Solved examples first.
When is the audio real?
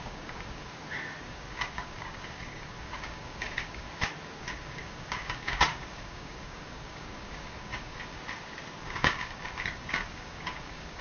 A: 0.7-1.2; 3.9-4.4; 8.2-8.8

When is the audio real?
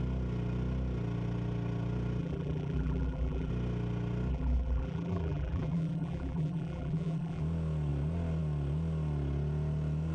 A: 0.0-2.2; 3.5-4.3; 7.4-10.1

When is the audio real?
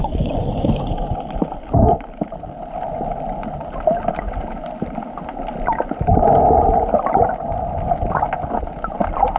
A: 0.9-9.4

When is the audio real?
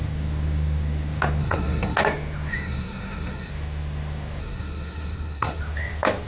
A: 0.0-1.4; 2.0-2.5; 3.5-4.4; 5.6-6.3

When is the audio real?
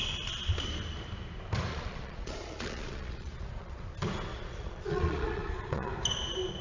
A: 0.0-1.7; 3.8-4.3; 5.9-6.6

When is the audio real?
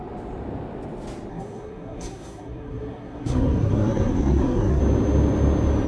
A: 0.0-1.3; 4.8-5.9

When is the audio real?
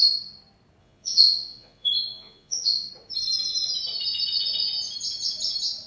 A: 0.0-0.8; 2.9-5.9